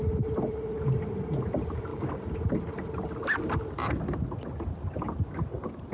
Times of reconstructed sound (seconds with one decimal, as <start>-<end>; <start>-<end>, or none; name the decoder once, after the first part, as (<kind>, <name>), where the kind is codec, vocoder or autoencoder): none